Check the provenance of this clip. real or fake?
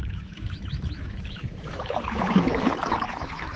fake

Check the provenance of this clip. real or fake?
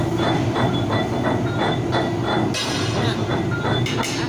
real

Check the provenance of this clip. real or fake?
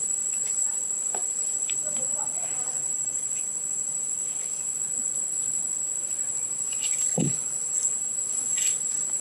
real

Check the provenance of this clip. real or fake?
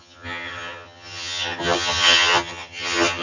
fake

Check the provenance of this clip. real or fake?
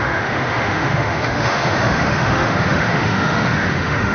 fake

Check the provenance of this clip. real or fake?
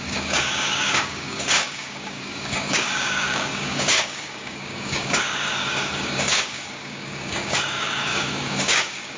fake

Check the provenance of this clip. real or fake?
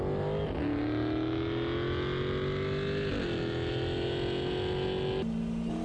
real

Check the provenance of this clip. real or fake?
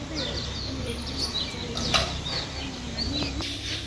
real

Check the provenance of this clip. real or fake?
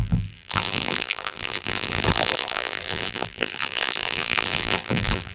fake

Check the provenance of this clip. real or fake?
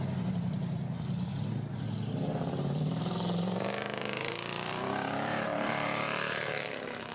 fake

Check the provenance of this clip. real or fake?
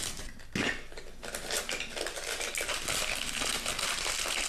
real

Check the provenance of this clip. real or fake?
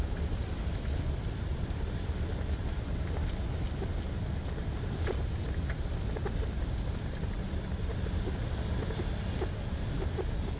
real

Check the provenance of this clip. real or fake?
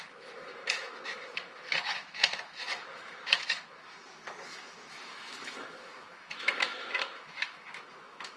fake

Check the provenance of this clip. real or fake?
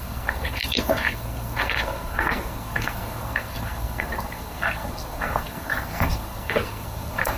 fake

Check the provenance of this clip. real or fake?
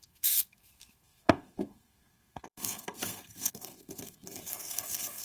fake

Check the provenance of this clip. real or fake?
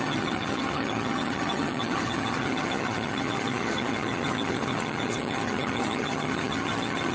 fake